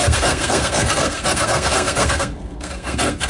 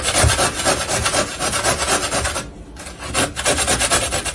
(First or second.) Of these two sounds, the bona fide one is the second